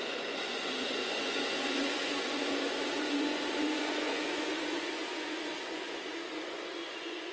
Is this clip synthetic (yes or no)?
yes